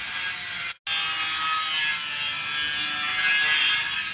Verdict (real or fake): real